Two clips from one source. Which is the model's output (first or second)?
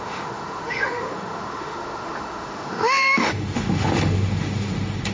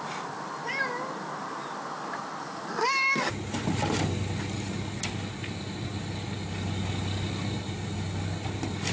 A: first